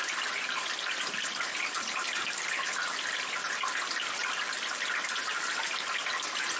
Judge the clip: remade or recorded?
recorded